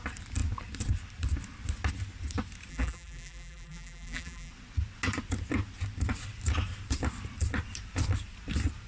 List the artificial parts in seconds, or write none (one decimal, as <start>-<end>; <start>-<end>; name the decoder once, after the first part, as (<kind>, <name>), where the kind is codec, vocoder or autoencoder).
2.7-4.5 (vocoder, BigVGAN v2)